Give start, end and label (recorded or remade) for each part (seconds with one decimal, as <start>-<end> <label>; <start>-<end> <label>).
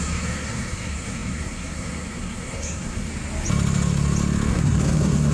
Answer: 0.0-3.1 remade; 3.1-4.5 recorded; 4.5-5.3 remade